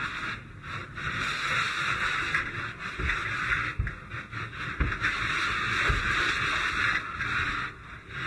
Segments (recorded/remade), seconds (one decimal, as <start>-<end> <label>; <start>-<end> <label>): 0.0-0.8 recorded; 0.8-2.0 remade; 2.0-8.3 recorded